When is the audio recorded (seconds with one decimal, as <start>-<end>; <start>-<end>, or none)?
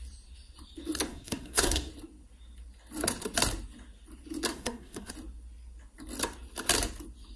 0.0-1.1; 1.9-4.5; 5.1-7.4